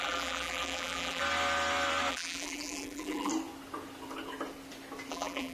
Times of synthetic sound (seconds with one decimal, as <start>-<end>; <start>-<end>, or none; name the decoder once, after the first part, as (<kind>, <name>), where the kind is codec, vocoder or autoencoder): 0.0-1.2 (vocoder, BigVGAN v2); 2.1-3.3; 5.1-5.5